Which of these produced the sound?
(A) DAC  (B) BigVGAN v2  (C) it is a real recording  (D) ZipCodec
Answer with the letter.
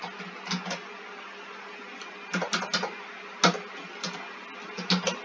C